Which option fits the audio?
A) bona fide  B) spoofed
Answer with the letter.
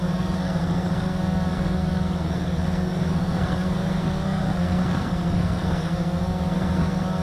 B